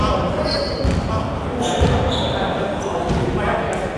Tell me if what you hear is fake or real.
real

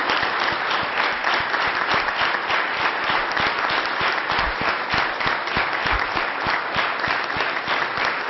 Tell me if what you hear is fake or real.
real